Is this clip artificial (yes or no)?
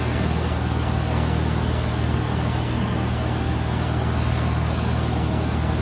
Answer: yes